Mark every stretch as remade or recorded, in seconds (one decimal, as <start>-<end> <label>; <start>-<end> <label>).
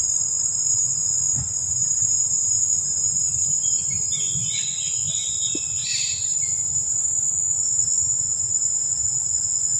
0.0-1.6 recorded; 1.6-4.0 remade; 4.0-5.8 recorded; 5.8-6.4 remade; 6.4-9.8 recorded